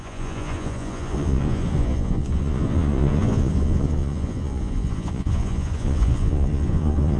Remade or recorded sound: remade